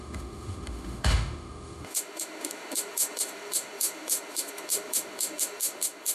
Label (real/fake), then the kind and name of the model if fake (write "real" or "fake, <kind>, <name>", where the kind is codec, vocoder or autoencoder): fake, autoencoder, DAC-VAE